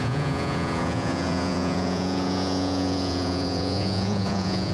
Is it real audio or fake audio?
fake